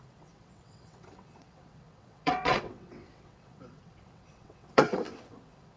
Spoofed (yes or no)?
yes